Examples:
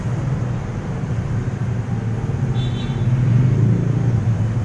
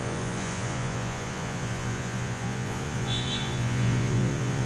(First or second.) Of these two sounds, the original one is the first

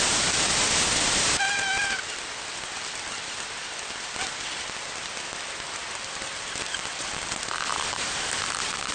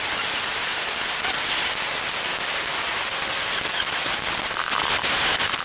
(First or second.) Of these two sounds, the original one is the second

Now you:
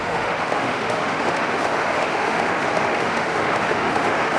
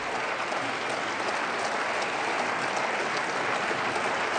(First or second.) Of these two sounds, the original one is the second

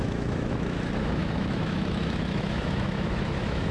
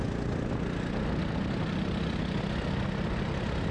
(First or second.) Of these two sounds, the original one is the second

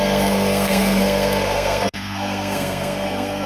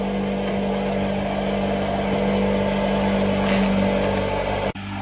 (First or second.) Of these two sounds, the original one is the second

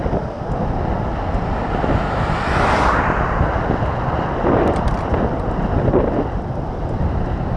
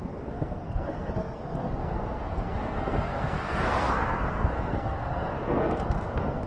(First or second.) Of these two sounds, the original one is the first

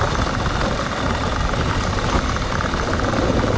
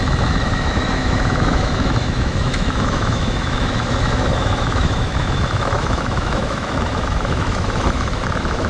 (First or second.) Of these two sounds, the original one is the first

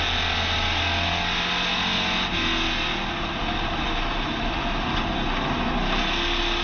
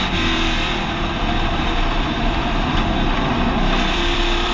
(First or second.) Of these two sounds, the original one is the first